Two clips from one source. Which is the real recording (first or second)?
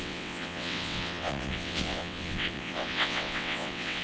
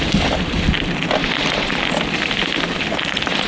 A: second